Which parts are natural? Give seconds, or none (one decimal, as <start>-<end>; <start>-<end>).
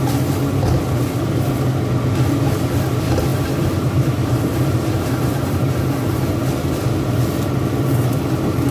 0.0-3.3; 5.8-8.7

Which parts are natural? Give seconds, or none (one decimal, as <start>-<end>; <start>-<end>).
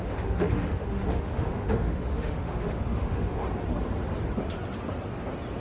3.4-5.6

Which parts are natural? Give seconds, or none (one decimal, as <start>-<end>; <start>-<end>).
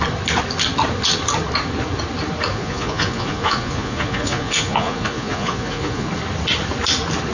0.0-2.5; 6.1-7.3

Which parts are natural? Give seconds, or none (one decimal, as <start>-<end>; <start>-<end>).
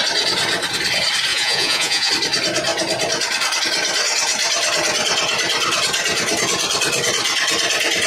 0.0-1.3; 2.1-8.1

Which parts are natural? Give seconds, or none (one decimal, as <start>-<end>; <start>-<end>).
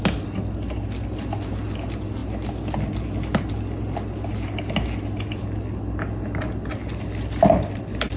0.0-8.2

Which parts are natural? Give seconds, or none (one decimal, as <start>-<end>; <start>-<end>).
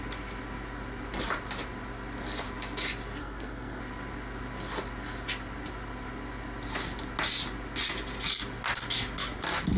0.0-3.2; 3.8-9.8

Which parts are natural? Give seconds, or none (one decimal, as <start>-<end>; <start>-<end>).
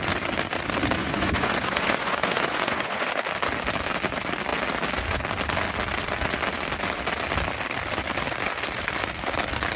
0.0-1.0; 3.1-9.8